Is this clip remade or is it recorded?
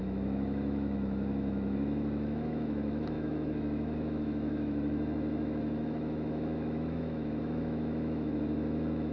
remade